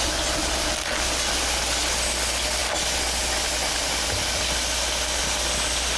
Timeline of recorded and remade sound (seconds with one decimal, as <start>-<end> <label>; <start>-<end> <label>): 0.0-6.0 recorded